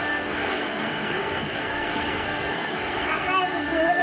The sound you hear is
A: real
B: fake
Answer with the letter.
B